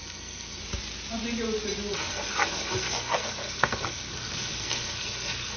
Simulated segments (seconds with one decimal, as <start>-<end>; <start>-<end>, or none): 0.0-0.6; 1.9-5.6